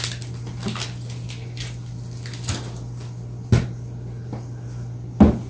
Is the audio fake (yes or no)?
no